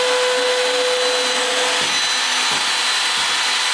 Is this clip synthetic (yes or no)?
no